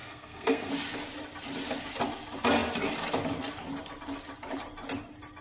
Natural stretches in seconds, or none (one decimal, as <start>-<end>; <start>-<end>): 0.7-5.4